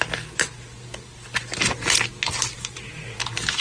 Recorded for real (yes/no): yes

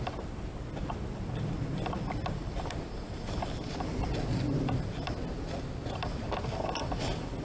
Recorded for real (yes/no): yes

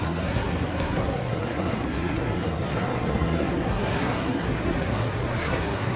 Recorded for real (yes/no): no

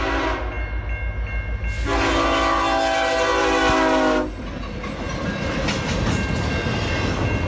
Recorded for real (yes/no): yes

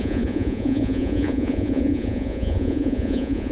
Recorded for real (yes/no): no